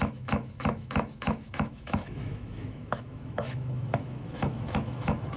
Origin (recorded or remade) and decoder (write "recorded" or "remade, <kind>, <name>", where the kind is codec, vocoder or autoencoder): remade, autoencoder, DAC-VAE